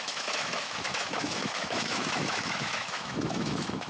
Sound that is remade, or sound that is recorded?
remade